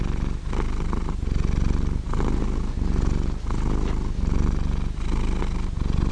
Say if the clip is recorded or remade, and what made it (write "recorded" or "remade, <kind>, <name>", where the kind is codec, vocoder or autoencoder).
recorded